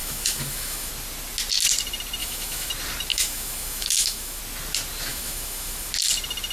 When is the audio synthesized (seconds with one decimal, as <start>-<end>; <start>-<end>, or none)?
0.0-0.9; 2.2-2.7; 3.1-4.4; 5.1-5.9